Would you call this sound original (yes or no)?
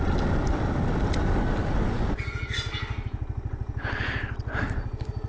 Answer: yes